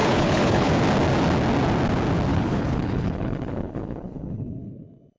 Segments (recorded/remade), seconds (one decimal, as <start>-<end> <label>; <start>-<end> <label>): 0.0-0.7 remade; 0.7-2.3 recorded; 2.3-5.2 remade